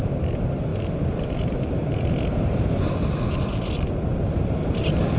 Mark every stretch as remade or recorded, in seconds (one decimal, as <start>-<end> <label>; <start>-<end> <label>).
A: 0.0-0.7 recorded; 0.7-3.8 remade; 3.8-4.6 recorded; 4.6-5.2 remade